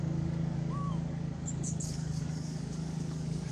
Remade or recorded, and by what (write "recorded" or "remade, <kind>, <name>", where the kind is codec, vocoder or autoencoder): remade, codec, DAC